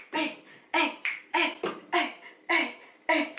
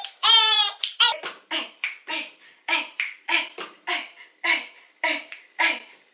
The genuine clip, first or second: first